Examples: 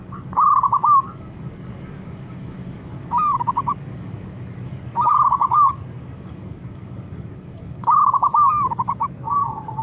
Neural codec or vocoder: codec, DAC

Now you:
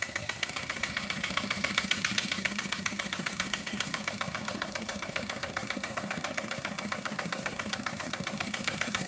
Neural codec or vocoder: codec, SNAC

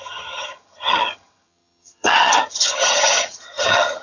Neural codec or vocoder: vocoder, HiFi-GAN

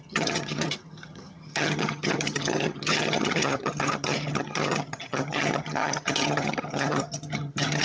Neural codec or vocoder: vocoder, HiFi-GAN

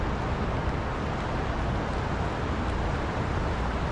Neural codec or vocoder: none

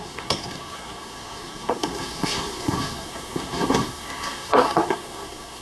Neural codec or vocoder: codec, SNAC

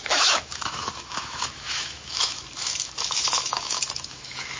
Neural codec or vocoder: autoencoder, DAC-VAE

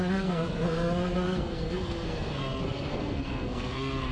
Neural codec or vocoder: codec, SNAC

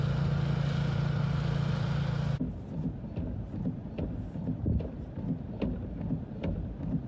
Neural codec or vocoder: none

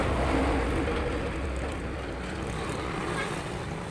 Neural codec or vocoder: none